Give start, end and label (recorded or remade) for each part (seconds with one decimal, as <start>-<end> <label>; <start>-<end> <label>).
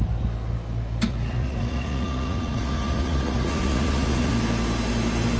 0.0-1.1 recorded; 1.1-4.3 remade; 4.3-5.4 recorded